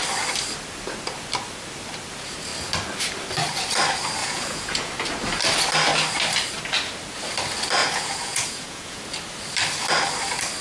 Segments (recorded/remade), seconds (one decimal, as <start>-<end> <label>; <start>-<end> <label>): 0.0-4.2 recorded; 4.2-4.9 remade; 4.9-7.8 recorded; 7.8-9.0 remade; 9.0-10.6 recorded